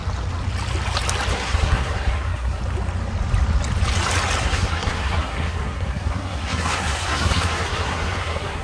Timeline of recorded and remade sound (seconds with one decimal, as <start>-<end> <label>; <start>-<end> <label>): 0.0-1.3 recorded; 1.3-2.6 remade; 2.6-4.4 recorded; 4.4-8.6 remade